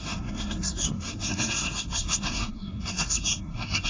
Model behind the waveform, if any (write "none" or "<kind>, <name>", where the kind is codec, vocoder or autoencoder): codec, SNAC